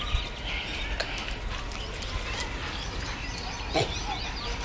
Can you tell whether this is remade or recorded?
recorded